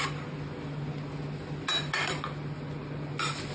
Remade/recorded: recorded